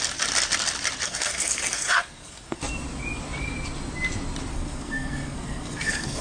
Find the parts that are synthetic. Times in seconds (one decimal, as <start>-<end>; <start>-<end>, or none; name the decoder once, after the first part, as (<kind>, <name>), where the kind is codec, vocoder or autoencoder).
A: 1.0-2.6 (codec, SNAC); 4.5-6.2